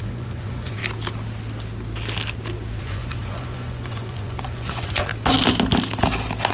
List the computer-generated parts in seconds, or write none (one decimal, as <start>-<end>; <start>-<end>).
0.0-0.8; 2.8-5.1